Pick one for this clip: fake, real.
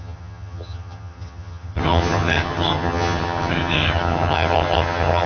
fake